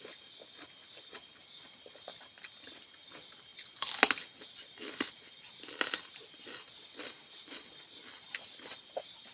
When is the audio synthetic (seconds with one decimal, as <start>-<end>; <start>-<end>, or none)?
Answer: none